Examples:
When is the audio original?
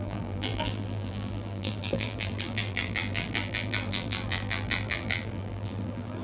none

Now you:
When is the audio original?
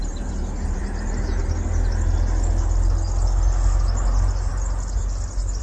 1.4-5.6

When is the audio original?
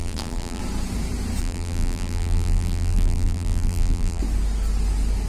0.6-1.4; 4.2-5.3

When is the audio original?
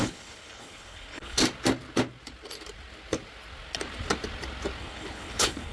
1.4-4.8